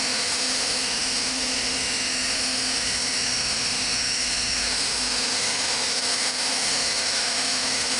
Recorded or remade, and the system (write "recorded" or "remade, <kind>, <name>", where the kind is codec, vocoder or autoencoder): remade, autoencoder, DAC-VAE